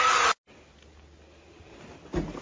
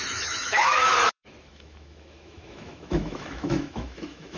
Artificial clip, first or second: second